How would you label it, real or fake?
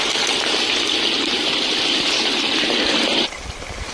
real